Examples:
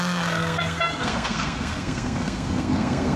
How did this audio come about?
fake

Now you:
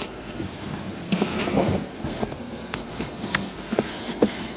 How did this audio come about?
fake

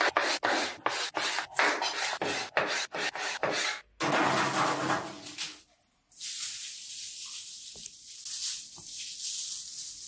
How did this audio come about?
real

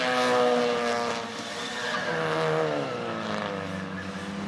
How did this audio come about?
real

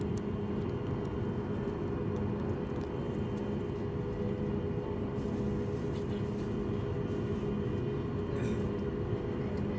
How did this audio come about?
real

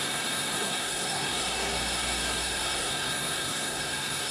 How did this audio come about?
fake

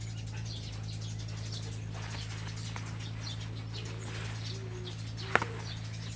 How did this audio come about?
real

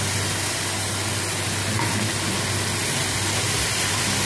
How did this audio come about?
real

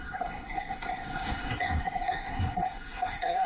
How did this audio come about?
fake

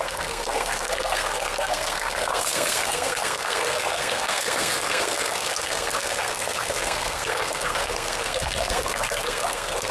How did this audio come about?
fake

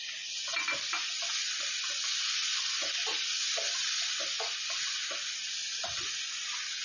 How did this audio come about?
real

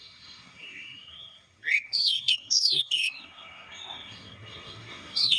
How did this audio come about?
fake